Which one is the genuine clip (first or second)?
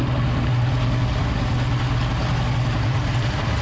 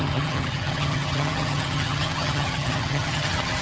first